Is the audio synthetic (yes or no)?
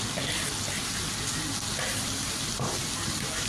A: no